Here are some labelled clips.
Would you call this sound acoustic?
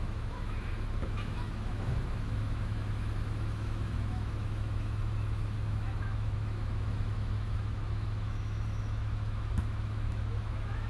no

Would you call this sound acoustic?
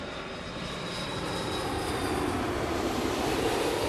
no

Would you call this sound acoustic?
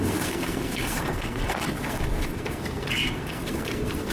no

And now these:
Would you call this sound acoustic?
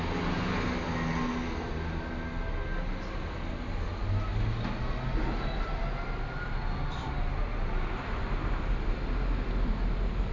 yes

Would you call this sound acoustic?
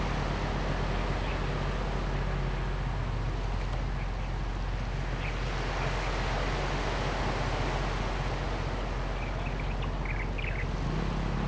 yes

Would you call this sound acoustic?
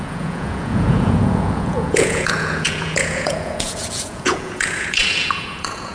no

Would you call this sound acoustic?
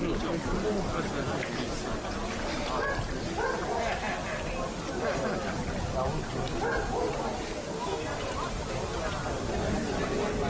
yes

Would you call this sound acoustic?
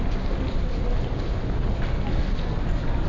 yes